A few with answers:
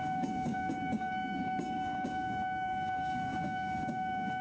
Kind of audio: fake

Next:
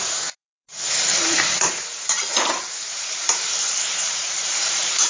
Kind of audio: fake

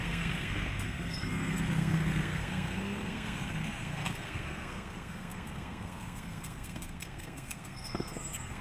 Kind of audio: fake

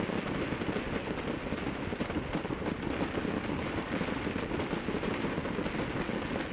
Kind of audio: real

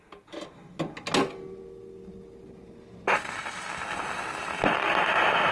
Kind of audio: real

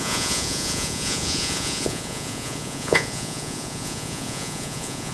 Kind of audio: fake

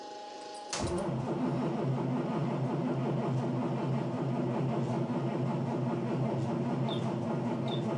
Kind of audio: real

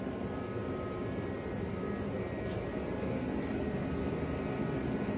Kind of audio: real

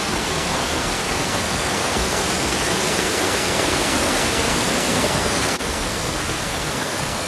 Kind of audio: fake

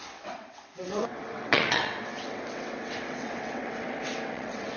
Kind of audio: fake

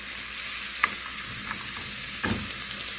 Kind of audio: real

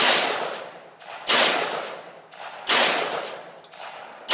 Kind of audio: real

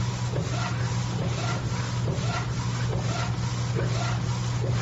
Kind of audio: real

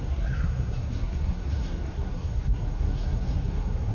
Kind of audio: fake